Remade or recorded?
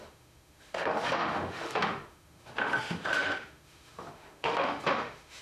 remade